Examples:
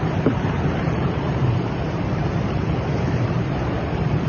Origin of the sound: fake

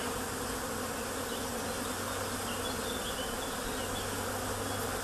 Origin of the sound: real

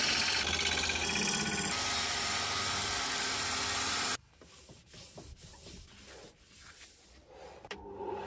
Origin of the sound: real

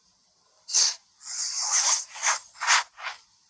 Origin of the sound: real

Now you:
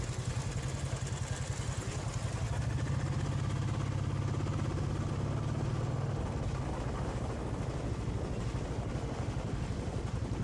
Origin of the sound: real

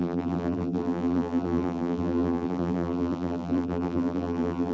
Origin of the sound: fake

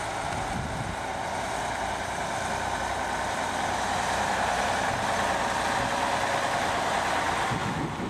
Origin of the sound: real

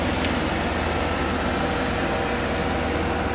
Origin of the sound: real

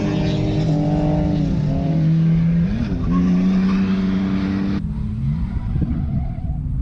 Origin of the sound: real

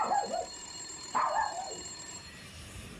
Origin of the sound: fake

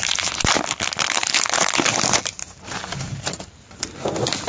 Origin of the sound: real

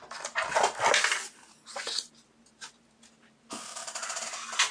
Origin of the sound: real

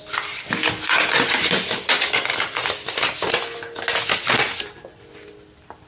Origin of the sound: real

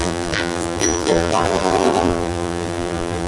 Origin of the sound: fake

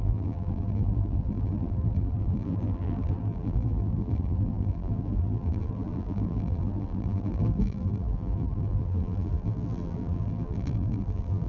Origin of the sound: fake